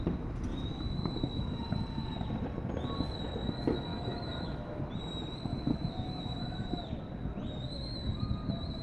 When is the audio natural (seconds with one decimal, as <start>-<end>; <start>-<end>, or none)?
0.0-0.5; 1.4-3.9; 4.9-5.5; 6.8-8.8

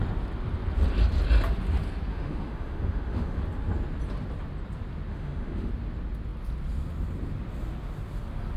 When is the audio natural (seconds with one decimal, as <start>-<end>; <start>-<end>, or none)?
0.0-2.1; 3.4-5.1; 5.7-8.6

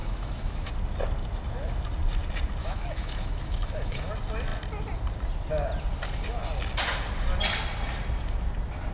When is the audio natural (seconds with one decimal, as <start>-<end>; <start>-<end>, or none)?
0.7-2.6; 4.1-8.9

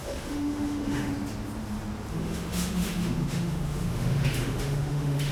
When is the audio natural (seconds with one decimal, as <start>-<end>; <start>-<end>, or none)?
1.1-2.1

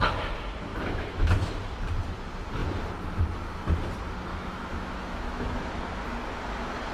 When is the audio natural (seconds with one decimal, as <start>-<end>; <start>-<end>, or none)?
0.0-0.7; 1.5-4.3; 5.8-6.9